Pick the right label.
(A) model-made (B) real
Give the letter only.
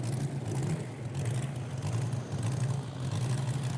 B